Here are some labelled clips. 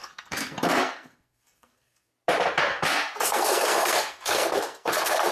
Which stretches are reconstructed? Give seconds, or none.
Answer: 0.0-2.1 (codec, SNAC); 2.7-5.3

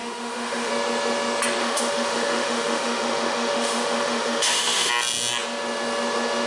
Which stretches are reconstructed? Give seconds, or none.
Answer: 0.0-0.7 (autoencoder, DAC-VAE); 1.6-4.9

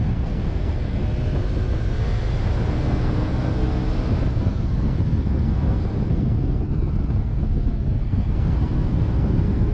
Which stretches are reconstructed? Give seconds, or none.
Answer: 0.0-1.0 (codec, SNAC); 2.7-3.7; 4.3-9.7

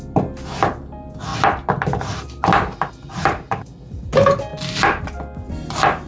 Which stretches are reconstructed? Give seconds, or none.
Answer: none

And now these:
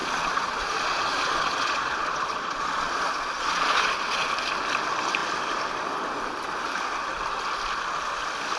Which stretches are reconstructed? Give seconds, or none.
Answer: 0.0-4.3 (vocoder, Vocos)

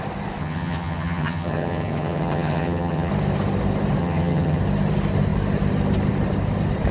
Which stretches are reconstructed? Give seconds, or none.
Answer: 0.4-3.1 (vocoder, HiFi-GAN); 4.0-4.6